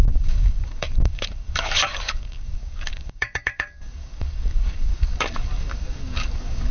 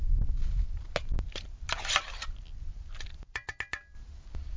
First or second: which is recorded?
second